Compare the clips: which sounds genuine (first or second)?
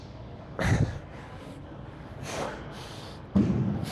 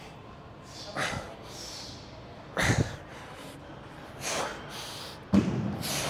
second